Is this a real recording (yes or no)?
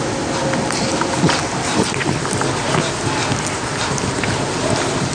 yes